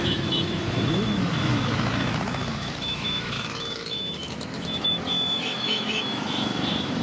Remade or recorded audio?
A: remade